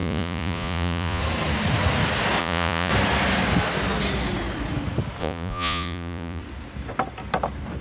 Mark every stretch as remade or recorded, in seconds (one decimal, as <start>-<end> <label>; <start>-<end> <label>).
0.0-1.2 remade; 1.2-2.4 recorded; 2.4-2.9 remade; 2.9-5.2 recorded; 5.2-6.4 remade; 6.4-7.8 recorded

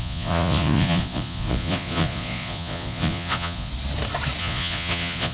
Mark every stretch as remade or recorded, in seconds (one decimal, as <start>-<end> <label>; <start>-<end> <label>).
0.0-3.7 remade; 3.7-4.4 recorded; 4.4-5.3 remade

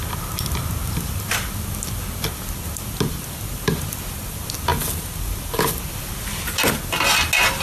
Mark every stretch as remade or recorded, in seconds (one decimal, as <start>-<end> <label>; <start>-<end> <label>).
0.0-7.6 recorded

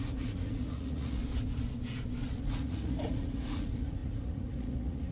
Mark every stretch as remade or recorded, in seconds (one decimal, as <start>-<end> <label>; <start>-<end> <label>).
0.0-1.2 remade; 1.2-2.4 recorded; 2.4-5.1 remade

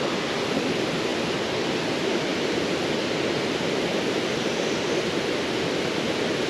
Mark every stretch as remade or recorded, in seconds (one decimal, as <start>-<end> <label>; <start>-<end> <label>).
0.0-6.5 recorded